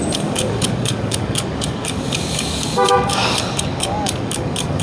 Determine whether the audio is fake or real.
fake